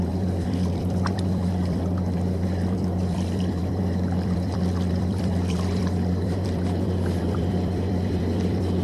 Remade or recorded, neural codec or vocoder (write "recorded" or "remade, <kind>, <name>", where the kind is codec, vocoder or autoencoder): remade, vocoder, BigVGAN v2